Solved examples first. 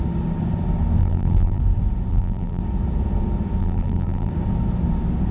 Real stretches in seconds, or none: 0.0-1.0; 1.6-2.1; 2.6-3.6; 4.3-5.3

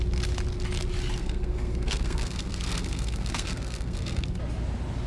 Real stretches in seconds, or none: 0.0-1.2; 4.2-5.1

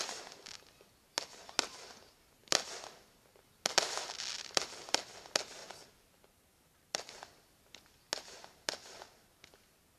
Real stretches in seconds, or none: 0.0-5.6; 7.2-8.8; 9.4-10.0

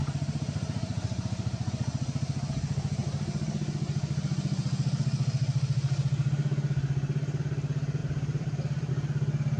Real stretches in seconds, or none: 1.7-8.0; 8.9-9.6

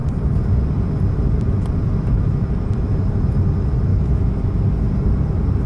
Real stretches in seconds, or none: 0.0-3.9; 4.7-5.7